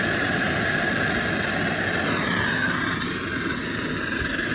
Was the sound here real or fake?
real